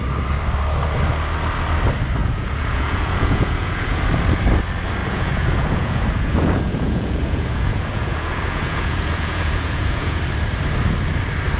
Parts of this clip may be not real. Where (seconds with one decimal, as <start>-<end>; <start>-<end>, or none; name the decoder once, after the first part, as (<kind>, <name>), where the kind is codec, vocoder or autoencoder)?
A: 2.2-4.0 (vocoder, Vocos); 5.0-10.2